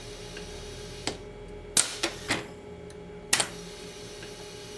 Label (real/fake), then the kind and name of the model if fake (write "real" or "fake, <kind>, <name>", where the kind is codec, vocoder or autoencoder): real